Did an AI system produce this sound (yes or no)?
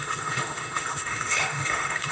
yes